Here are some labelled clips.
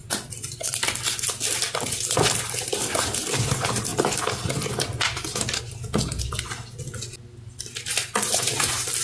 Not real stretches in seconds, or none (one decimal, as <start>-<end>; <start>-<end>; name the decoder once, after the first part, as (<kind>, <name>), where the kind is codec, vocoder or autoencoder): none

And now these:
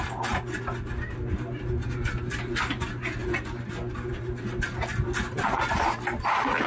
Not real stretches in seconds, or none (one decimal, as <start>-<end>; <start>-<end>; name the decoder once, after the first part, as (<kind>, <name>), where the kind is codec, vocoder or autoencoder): none

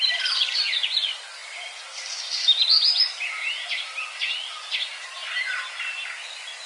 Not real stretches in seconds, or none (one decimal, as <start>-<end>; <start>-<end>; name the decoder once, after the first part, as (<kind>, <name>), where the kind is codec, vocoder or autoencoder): none

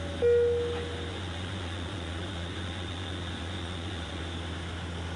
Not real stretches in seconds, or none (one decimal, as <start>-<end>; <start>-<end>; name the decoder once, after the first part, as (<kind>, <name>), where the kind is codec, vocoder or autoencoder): 1.1-4.2 (vocoder, Vocos)